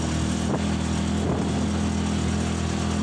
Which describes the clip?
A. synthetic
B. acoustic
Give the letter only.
B